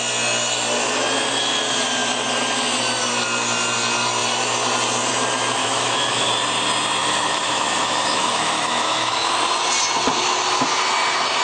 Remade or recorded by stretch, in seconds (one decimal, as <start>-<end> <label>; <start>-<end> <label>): 0.0-5.6 recorded; 5.6-6.3 remade; 6.3-7.0 recorded; 7.0-9.3 remade; 9.3-11.4 recorded